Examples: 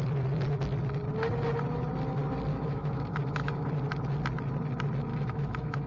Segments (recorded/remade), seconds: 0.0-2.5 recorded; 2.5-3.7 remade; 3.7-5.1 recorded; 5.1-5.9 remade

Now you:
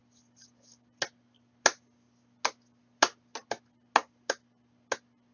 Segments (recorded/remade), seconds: 0.0-5.3 recorded

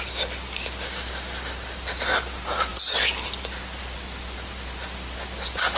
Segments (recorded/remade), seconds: 0.0-5.8 recorded